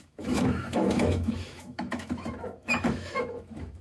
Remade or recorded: remade